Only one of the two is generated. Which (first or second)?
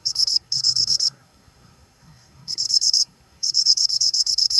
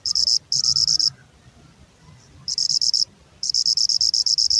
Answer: first